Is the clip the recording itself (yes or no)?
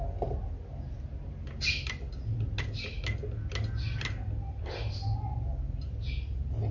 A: yes